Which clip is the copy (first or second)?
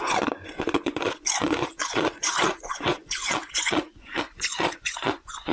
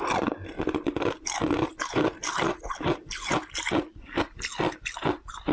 first